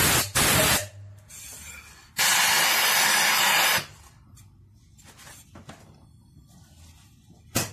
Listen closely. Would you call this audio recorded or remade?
recorded